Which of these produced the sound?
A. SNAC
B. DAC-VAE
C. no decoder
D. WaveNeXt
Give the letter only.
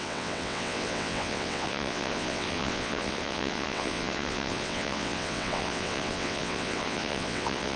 D